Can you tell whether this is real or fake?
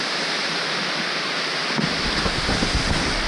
real